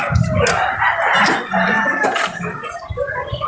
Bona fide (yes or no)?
yes